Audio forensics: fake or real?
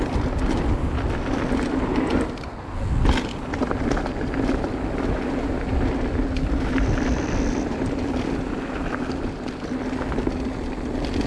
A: real